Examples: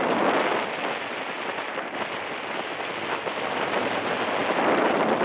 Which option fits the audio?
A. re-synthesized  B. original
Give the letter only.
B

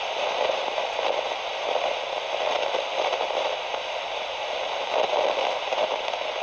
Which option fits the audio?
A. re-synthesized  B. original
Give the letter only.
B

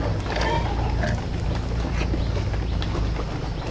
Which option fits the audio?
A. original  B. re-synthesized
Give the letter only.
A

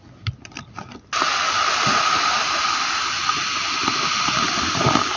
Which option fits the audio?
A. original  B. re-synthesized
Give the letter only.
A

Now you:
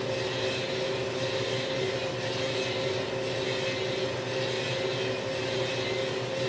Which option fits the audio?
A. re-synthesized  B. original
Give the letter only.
B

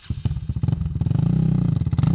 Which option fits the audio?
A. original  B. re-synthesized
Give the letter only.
A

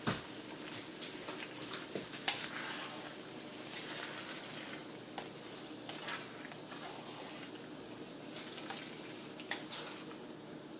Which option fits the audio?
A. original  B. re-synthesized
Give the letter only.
A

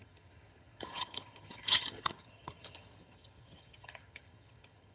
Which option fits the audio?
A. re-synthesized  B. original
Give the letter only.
A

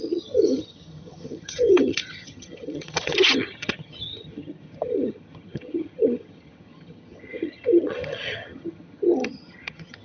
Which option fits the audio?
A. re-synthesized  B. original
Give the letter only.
A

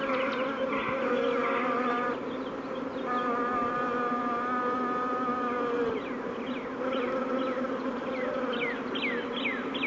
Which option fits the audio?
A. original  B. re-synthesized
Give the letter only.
A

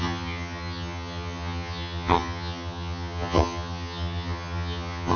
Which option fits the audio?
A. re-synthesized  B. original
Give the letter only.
A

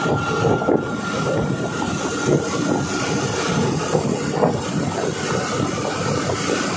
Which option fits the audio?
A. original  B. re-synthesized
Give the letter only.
A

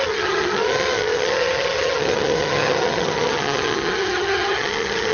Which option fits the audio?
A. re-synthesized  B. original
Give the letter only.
A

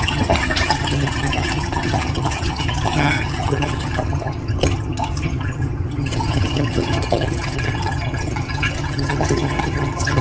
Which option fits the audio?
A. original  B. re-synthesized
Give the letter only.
B